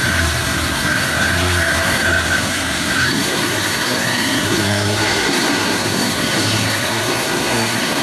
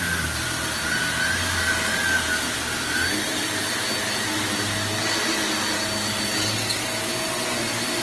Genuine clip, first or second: second